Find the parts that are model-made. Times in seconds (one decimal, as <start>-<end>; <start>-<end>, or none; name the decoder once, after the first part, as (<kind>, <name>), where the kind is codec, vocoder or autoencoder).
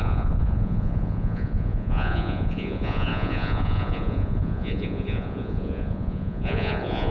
0.0-7.1 (vocoder, Vocos)